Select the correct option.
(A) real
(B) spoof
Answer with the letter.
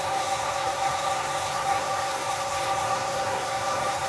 B